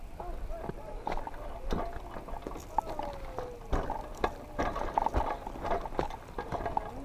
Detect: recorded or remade recorded